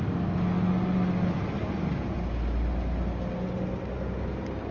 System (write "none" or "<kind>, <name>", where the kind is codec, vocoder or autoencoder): none